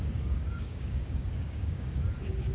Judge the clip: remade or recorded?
remade